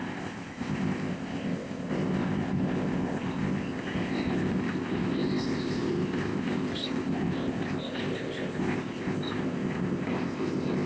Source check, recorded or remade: remade